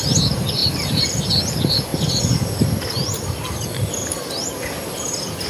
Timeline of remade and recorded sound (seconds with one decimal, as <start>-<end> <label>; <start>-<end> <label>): 0.0-0.6 recorded; 0.6-1.2 remade; 1.2-5.5 recorded